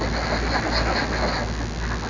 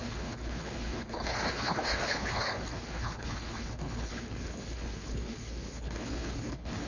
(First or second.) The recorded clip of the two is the first